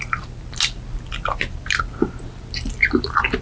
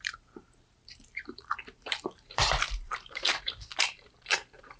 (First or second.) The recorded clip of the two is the first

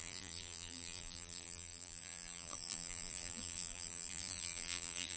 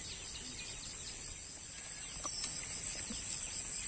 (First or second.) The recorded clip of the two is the second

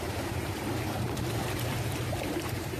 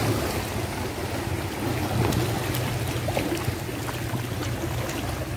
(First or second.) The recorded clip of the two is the second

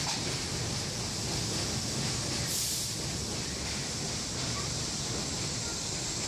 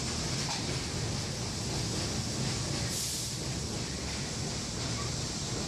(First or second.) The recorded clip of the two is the second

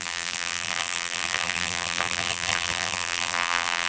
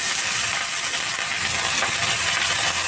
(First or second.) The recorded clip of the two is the second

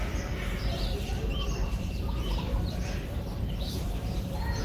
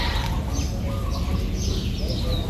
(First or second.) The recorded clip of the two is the second